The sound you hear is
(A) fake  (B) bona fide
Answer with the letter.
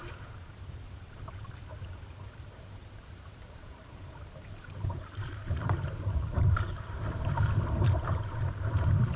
A